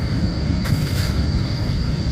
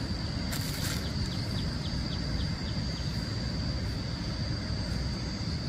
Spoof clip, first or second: first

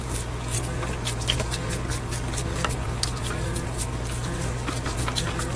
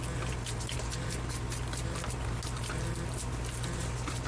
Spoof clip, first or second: first